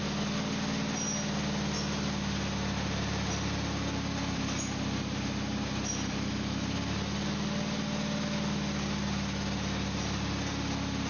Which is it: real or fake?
real